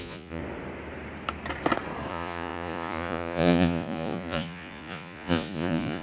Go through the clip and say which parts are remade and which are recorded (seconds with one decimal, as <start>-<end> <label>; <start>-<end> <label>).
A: 0.0-0.4 remade; 0.4-2.1 recorded; 2.1-6.0 remade